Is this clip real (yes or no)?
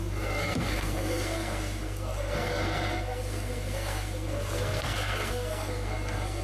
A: no